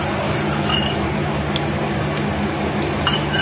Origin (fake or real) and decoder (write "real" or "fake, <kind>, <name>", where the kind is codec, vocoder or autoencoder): real